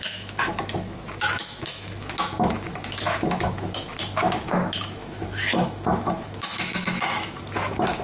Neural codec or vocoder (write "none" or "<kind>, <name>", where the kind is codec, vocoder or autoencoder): autoencoder, DAC-VAE